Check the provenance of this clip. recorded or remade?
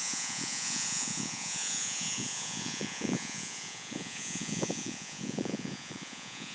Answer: remade